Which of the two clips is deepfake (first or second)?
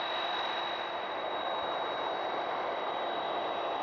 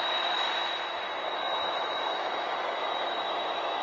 second